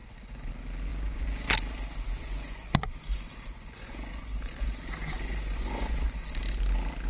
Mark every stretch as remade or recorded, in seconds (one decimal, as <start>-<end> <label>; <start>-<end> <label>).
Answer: 0.0-0.5 remade; 0.5-0.9 recorded; 0.9-1.5 remade; 1.5-2.2 recorded; 2.2-6.4 remade; 6.4-7.1 recorded